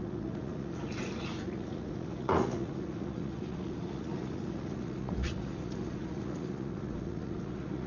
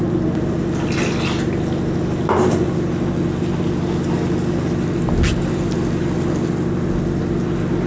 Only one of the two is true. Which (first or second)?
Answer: second